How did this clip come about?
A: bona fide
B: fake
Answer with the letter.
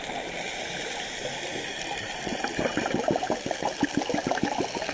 A